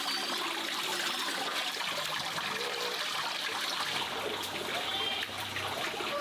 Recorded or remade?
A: recorded